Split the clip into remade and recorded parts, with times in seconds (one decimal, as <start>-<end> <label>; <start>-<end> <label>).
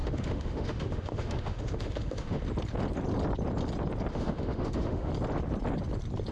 0.0-2.4 remade; 2.4-4.1 recorded; 4.1-5.1 remade; 5.1-6.3 recorded